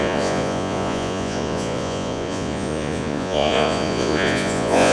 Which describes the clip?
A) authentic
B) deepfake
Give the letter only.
B